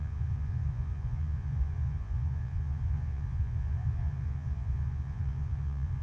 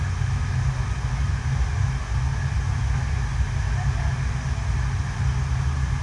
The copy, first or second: first